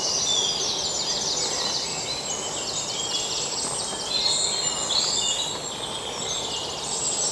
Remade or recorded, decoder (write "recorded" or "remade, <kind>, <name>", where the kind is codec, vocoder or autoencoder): recorded